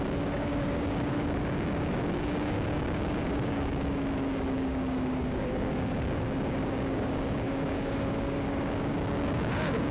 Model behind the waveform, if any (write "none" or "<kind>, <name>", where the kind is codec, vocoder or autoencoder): codec, DAC